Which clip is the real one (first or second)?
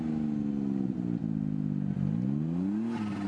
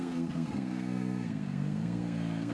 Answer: first